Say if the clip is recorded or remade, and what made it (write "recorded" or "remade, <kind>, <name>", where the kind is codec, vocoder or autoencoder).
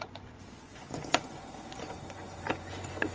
remade, vocoder, Vocos